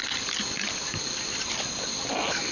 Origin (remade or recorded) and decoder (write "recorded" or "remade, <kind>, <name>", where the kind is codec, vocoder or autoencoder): recorded